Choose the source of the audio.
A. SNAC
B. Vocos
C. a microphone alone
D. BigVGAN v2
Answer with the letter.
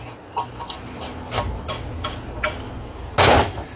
C